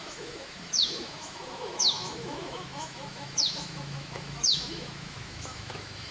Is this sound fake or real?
fake